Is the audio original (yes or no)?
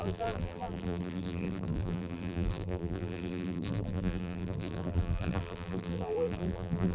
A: no